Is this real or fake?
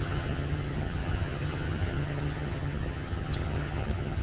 fake